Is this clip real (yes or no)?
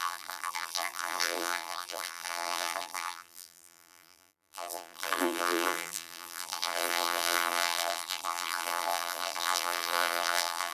no